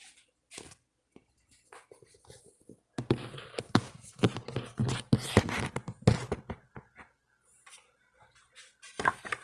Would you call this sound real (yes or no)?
yes